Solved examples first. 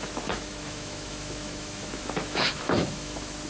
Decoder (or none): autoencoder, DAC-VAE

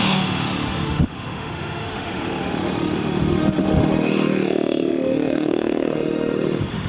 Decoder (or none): autoencoder, DAC-VAE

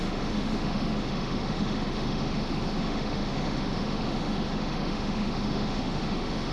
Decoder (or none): autoencoder, DAC-VAE